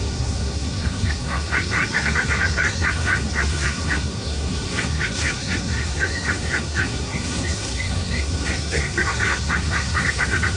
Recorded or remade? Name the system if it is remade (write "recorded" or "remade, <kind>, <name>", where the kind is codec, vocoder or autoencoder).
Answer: remade, codec, SNAC